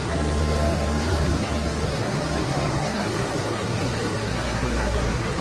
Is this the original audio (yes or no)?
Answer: no